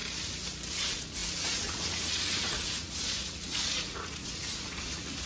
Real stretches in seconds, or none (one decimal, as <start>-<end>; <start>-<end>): 0.0-0.7